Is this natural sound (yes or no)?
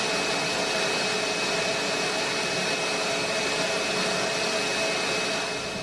yes